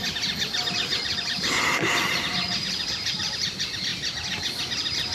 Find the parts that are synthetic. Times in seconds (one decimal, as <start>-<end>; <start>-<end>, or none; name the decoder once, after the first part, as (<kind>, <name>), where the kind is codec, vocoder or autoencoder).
none